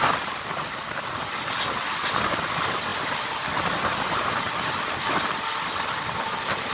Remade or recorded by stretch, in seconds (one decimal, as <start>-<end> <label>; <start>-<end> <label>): 0.0-6.7 recorded